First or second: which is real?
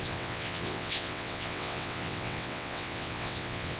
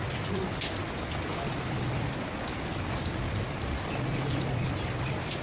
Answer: second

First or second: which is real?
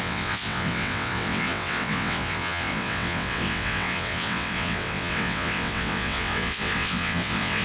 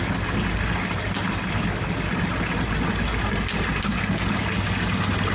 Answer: second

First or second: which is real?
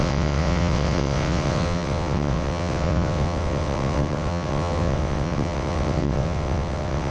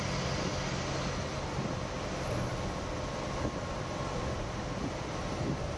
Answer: second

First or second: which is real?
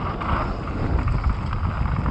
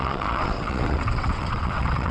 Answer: first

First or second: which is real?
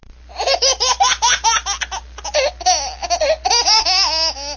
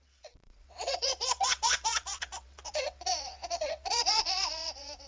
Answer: first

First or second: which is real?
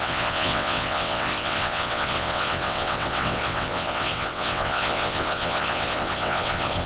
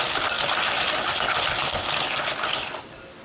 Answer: second